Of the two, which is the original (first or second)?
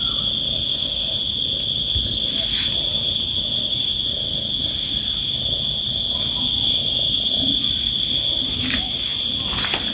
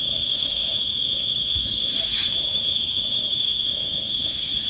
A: first